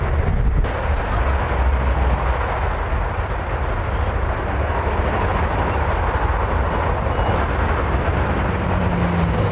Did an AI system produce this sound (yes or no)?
no